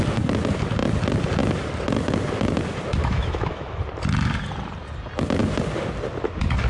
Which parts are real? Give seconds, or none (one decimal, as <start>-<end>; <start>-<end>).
0.0-3.0; 3.8-6.7